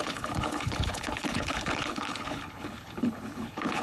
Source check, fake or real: fake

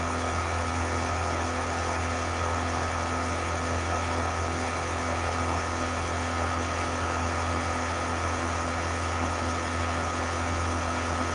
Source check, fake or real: fake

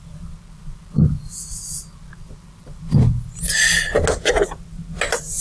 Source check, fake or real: real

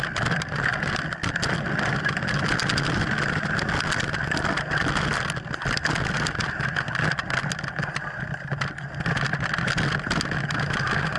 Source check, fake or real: real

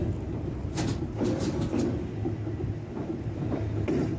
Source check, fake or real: real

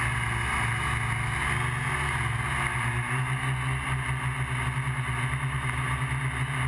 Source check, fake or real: real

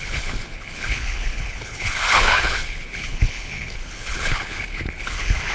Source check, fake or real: fake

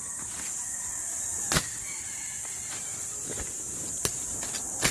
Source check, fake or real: real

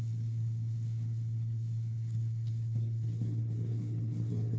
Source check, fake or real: fake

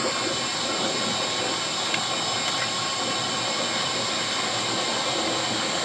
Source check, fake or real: real